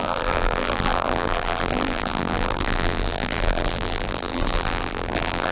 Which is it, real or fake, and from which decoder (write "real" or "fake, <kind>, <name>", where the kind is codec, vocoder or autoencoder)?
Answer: fake, vocoder, BigVGAN v2